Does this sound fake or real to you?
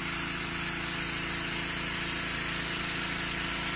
real